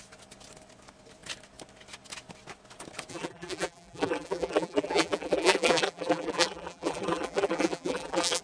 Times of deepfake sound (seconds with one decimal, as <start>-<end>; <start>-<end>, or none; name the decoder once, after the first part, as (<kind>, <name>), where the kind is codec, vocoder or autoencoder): 3.1-8.4 (vocoder, BigVGAN v2)